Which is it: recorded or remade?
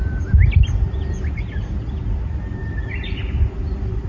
recorded